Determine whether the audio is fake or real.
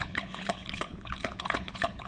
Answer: fake